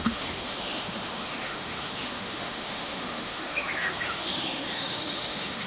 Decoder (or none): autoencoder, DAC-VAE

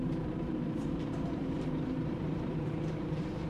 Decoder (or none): vocoder, BigVGAN v2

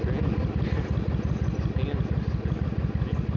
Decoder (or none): none